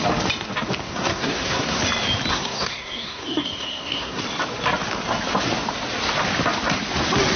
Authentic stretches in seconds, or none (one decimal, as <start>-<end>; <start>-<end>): 0.0-0.8; 1.8-2.3; 4.2-7.4

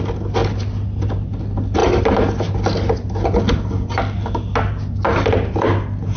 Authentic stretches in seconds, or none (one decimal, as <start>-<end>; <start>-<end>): 0.0-6.2

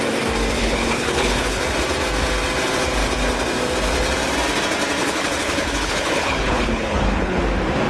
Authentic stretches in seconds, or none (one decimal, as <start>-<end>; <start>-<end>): 0.0-0.6; 1.6-5.0; 7.4-7.9

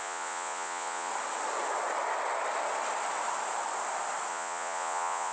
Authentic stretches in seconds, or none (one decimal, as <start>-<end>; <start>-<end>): 1.1-4.3